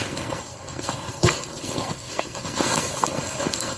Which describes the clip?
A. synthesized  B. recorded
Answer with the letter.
A